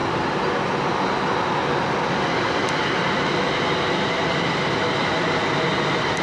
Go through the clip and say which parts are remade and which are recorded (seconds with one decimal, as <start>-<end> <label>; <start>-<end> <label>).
0.0-0.9 remade; 0.9-6.2 recorded